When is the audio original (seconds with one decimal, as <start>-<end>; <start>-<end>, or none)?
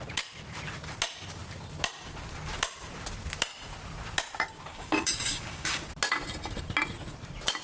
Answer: 0.0-4.7; 5.8-7.6